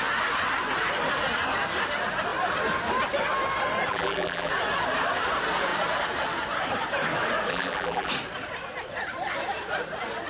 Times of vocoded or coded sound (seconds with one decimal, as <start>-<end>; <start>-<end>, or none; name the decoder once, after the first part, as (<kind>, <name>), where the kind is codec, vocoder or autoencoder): 3.9-4.5 (vocoder, BigVGAN v2); 7.5-8.1